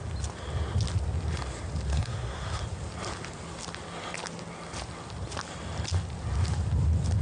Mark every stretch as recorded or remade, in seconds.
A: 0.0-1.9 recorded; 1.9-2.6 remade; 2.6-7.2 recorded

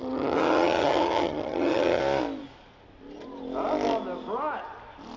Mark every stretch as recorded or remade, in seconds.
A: 0.0-2.0 remade; 2.0-5.2 recorded